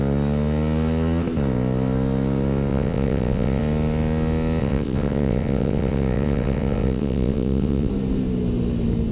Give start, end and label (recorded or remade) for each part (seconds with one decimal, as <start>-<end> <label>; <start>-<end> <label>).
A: 0.0-2.7 recorded; 2.7-3.6 remade; 3.6-4.6 recorded; 4.6-7.9 remade; 7.9-9.1 recorded